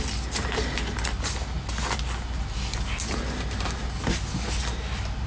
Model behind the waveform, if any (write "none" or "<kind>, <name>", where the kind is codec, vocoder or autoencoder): none